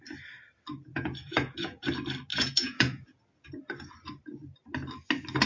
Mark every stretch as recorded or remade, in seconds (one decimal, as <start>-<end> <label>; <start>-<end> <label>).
0.0-0.9 recorded; 0.9-1.9 remade; 1.9-2.3 recorded; 2.3-3.2 remade; 3.2-5.5 recorded